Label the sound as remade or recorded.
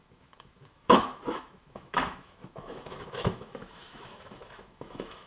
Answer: remade